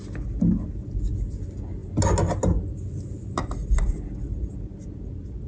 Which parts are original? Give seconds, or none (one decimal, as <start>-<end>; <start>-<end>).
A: 0.0-5.5